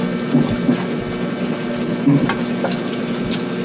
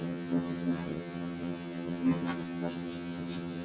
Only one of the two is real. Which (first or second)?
first